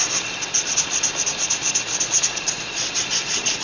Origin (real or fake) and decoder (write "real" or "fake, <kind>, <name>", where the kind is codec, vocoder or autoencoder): real